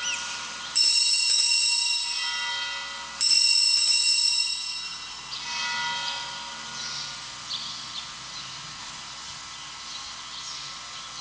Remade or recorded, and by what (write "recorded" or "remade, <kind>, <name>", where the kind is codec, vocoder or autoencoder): recorded